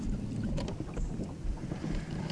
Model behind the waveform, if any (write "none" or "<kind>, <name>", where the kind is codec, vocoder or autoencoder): none